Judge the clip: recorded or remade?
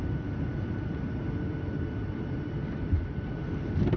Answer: recorded